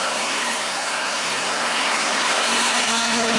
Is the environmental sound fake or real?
fake